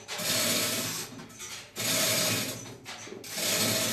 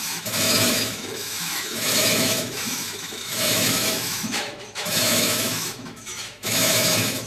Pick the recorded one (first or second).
first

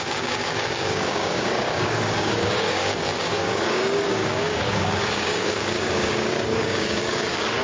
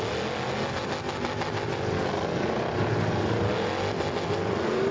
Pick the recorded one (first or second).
second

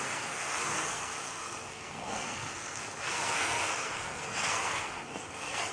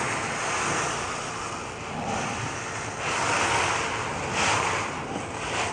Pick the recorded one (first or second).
second